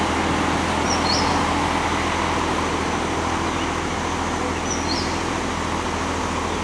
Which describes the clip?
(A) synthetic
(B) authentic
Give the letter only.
B